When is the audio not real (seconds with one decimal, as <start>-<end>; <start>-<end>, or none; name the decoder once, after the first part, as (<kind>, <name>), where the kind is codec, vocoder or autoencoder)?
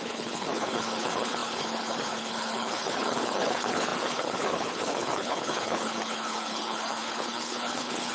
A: 0.0-8.1 (codec, HILCodec)